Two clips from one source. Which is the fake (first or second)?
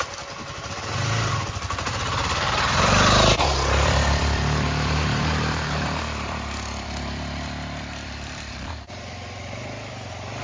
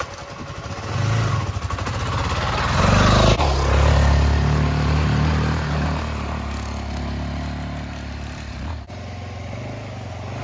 first